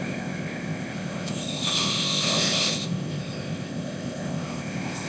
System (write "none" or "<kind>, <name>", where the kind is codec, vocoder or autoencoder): codec, ZipCodec